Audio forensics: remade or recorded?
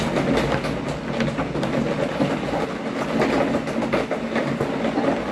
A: recorded